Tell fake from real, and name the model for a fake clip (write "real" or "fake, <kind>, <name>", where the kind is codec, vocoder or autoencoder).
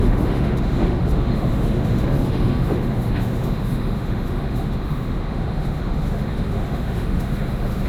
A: fake, autoencoder, DAC-VAE